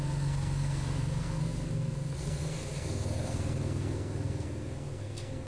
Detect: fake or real fake